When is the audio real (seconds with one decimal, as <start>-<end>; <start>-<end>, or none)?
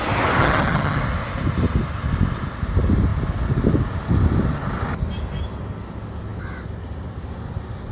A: 0.0-0.4; 1.0-7.9